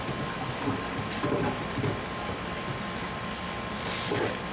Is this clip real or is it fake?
real